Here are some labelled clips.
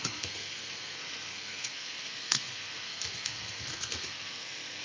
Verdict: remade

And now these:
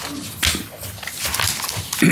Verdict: recorded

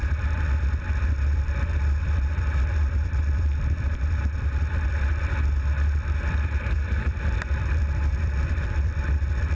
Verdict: remade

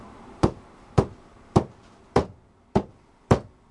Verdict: remade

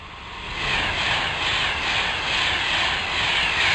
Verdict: recorded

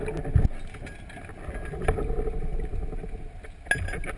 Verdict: recorded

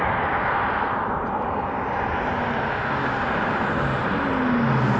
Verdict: recorded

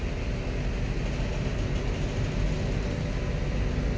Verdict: recorded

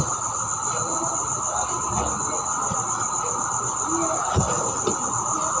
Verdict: recorded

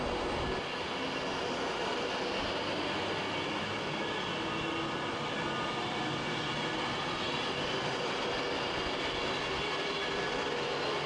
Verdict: recorded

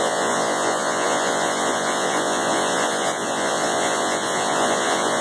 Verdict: remade